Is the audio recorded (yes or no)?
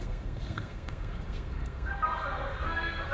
no